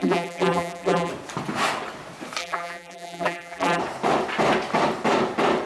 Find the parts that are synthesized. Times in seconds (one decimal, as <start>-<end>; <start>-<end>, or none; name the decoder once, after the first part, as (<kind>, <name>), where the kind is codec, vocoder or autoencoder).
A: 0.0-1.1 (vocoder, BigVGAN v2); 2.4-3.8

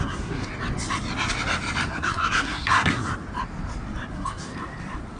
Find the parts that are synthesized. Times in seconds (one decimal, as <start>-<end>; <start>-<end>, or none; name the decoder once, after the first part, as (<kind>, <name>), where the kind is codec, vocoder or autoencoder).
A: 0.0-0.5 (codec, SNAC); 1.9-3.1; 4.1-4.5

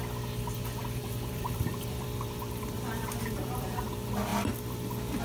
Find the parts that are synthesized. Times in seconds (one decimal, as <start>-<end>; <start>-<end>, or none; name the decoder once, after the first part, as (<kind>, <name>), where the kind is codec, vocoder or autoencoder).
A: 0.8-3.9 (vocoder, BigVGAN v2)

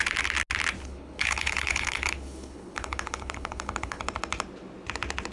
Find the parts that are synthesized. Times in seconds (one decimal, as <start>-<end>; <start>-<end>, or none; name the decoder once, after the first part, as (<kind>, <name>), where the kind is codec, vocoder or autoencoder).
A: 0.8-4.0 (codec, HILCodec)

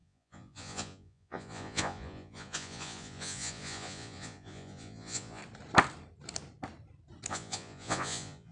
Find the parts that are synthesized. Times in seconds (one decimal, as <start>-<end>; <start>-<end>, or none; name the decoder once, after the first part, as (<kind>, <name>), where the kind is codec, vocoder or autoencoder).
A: 0.0-5.4 (vocoder, Vocos); 7.3-8.5

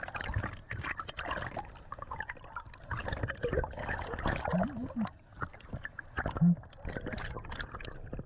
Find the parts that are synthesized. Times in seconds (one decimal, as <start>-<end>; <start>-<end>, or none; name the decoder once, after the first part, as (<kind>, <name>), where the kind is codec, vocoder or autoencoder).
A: none

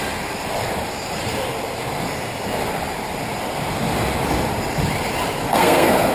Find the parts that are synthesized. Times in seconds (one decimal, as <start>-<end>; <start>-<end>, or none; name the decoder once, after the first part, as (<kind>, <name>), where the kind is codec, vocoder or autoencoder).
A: 5.4-6.1 (codec, SNAC)

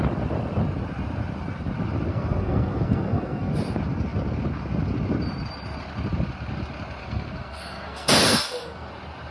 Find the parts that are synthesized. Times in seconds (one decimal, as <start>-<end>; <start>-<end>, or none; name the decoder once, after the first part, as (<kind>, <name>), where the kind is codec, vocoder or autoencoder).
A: 2.1-3.5 (codec, SNAC); 7.0-8.9